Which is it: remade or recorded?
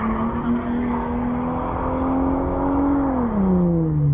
recorded